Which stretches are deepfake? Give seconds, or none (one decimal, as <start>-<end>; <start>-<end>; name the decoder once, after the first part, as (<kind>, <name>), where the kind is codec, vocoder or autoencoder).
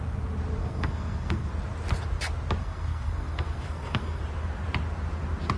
0.6-1.5 (codec, SNAC); 2.6-4.2